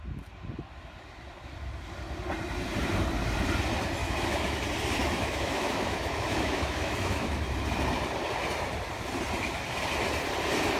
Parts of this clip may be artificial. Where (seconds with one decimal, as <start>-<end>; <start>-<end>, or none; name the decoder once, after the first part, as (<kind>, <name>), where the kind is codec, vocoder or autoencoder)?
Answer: 4.0-4.6 (autoencoder, DAC-VAE); 5.0-7.4